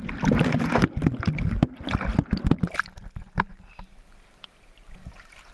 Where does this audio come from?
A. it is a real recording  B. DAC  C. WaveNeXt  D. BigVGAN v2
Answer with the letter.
A